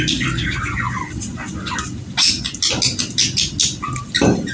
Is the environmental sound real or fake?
real